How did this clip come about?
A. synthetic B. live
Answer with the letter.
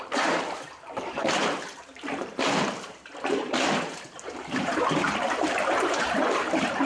A